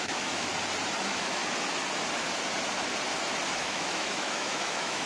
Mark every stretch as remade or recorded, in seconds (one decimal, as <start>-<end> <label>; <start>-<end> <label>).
0.0-0.5 remade; 0.5-1.0 recorded; 1.0-1.4 remade; 1.4-3.5 recorded; 3.5-5.1 remade